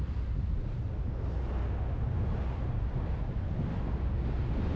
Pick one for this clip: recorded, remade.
recorded